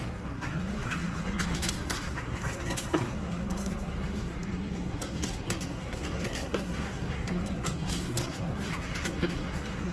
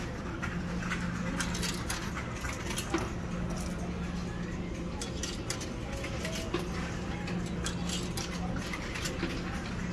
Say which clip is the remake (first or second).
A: first